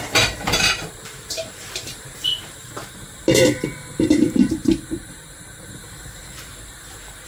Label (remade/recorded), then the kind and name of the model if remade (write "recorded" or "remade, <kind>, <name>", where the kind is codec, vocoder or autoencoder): remade, vocoder, BigVGAN v2